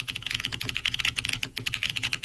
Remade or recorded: remade